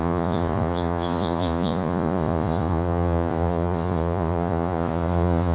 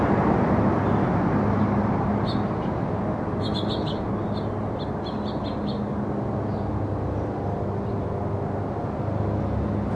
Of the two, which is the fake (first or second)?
first